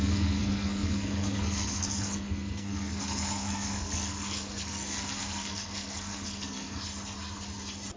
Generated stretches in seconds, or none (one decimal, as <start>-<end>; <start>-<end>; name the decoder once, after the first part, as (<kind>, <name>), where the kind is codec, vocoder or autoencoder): 0.0-6.8 (codec, SNAC)